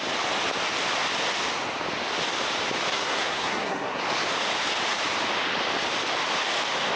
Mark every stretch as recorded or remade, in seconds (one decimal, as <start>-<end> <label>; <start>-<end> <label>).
0.0-2.9 recorded; 2.9-4.0 remade; 4.0-7.0 recorded